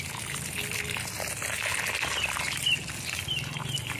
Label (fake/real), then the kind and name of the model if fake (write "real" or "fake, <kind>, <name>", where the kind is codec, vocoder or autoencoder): real